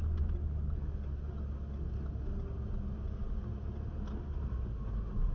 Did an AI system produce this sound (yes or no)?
no